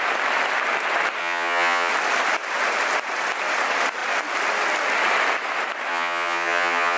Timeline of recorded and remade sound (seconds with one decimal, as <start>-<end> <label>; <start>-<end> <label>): 0.0-1.2 recorded; 1.2-1.9 remade; 1.9-5.9 recorded; 5.9-7.0 remade